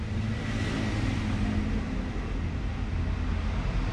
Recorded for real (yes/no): yes